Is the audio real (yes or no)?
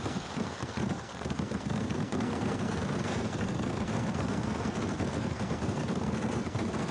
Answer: no